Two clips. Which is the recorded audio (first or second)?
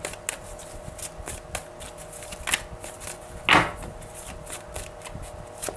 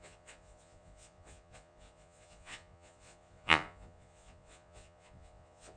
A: first